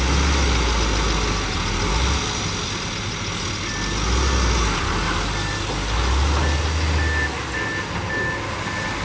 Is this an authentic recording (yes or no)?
yes